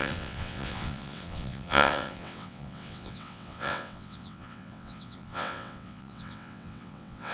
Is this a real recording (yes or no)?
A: no